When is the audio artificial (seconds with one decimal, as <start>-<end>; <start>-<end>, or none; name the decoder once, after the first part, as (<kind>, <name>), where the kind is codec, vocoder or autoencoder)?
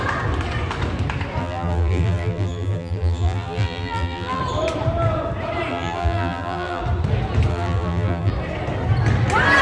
1.4-4.4 (vocoder, BigVGAN v2); 5.7-6.8; 7.5-8.3